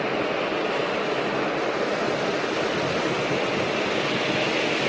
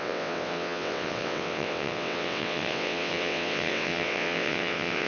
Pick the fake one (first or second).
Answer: second